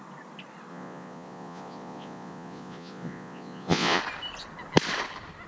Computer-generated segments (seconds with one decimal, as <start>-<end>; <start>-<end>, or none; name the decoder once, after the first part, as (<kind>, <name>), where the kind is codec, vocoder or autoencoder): 0.7-4.0 (vocoder, Vocos)